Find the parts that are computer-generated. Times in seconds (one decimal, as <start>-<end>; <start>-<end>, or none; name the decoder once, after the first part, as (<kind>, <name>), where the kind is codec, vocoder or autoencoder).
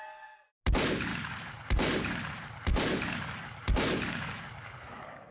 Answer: 1.1-2.3 (codec, DAC); 2.7-5.3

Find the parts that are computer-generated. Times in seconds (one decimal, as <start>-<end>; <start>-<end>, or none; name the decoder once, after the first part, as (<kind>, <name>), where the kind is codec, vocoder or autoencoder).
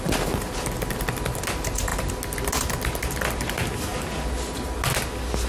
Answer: none